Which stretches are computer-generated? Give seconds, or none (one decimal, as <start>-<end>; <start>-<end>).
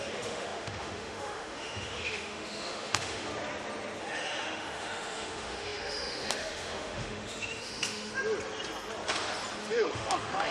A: 0.0-3.3; 4.0-8.1; 9.6-10.5